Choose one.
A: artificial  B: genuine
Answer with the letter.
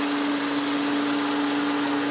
B